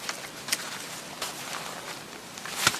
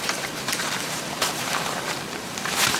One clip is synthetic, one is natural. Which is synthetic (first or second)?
second